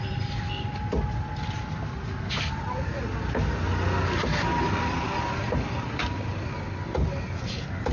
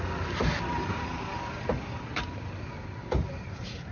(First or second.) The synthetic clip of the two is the second